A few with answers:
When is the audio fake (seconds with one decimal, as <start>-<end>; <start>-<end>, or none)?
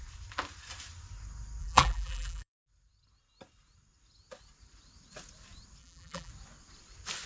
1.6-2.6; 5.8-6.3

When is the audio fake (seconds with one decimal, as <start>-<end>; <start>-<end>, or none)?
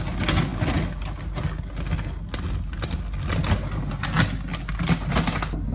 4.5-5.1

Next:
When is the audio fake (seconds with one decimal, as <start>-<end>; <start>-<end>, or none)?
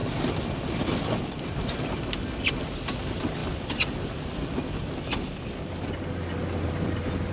0.0-1.6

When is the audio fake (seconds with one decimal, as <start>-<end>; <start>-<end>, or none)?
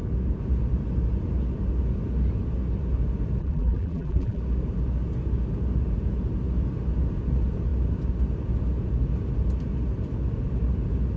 3.4-4.4